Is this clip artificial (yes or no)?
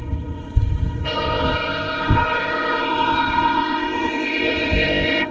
yes